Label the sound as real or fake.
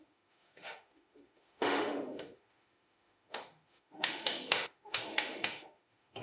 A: fake